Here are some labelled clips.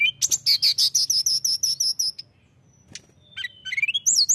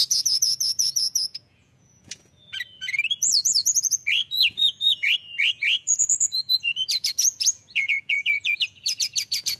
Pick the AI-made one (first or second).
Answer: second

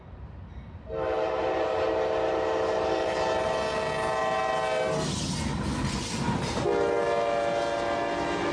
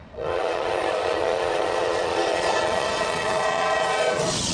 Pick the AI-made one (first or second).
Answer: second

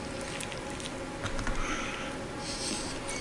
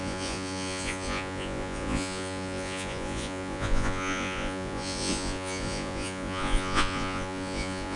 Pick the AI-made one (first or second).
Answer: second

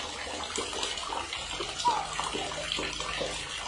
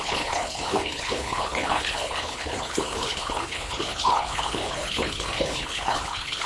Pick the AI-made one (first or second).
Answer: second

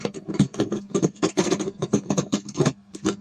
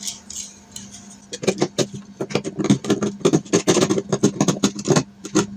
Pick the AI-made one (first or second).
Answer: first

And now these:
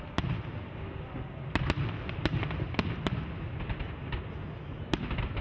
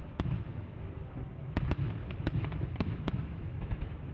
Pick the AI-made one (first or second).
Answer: second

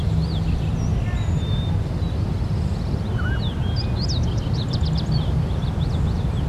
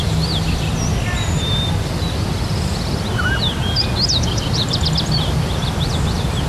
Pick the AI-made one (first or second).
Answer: second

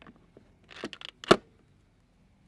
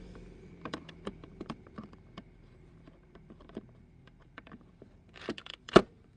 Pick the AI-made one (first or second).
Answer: second